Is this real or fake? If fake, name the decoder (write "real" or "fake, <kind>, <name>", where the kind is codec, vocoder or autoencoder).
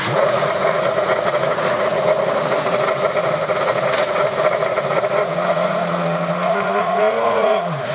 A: fake, vocoder, Vocos